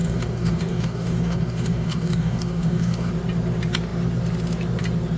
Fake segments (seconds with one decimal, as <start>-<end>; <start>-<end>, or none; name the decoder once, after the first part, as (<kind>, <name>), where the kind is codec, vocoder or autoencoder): 0.0-3.1 (codec, DAC)